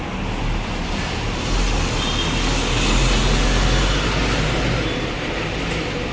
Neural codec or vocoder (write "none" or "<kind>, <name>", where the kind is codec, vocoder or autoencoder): none